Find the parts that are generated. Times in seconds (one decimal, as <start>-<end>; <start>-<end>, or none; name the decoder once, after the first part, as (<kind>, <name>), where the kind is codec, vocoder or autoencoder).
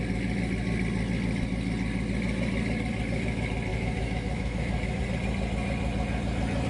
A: 3.7-5.0 (autoencoder, DAC-VAE)